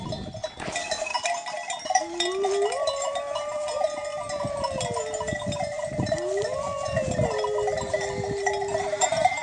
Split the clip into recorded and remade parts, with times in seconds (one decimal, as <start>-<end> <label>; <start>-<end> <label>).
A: 0.0-1.1 remade; 1.1-1.7 recorded; 1.7-4.1 remade; 4.1-5.9 recorded; 5.9-9.4 remade